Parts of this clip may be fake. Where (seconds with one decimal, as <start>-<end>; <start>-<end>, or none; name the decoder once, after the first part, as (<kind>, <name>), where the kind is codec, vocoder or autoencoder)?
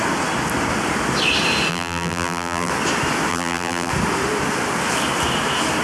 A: 1.7-2.7 (vocoder, BigVGAN v2); 3.3-3.9